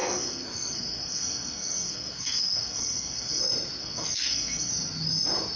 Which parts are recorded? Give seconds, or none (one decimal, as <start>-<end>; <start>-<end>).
3.4-3.8; 4.7-5.6